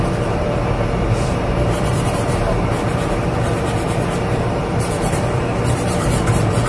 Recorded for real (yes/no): no